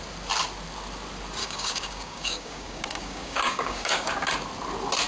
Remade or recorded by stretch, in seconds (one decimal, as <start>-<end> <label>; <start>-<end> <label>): 0.0-1.4 recorded; 1.4-4.1 remade; 4.1-5.1 recorded